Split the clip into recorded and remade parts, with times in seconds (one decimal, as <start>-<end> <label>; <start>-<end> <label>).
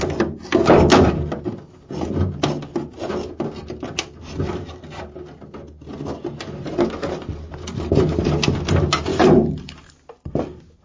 0.0-9.1 recorded; 9.1-9.9 remade; 9.9-10.8 recorded